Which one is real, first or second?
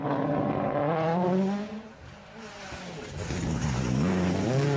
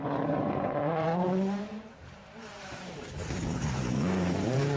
first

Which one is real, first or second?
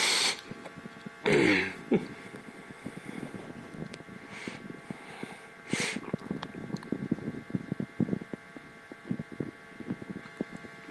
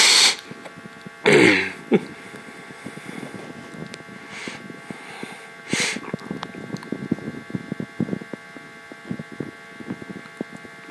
second